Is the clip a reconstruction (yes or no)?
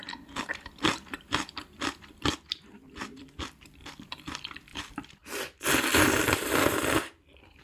yes